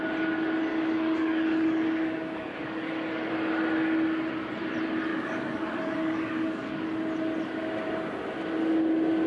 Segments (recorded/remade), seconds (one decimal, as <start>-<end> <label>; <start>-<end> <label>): 0.0-0.7 recorded; 0.7-3.3 remade; 3.3-5.1 recorded; 5.1-6.7 remade; 6.7-9.3 recorded